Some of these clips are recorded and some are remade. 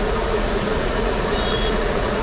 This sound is remade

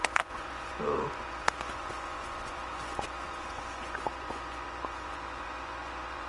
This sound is remade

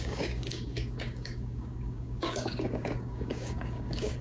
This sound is remade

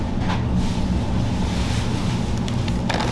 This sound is recorded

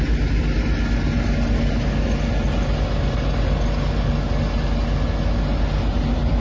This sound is recorded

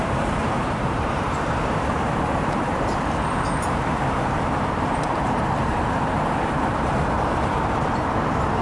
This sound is remade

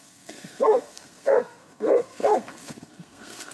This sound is remade